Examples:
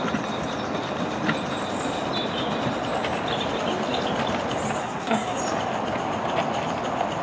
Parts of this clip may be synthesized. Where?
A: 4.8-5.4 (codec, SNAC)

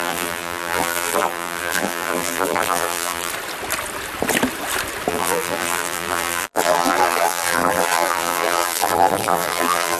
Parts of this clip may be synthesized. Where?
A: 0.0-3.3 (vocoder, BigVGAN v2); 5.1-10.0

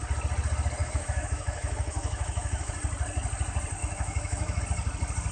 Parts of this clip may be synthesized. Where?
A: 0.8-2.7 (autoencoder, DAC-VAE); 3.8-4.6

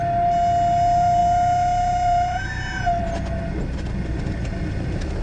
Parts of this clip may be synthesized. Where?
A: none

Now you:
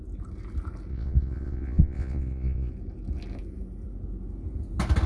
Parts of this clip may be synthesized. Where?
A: 0.9-2.7 (vocoder, Vocos)

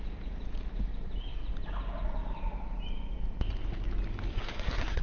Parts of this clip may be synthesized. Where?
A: 4.3-5.0 (codec, SNAC)

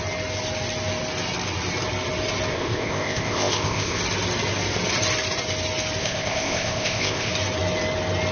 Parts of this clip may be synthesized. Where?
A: 2.5-4.0 (codec, ZipCodec); 6.0-7.3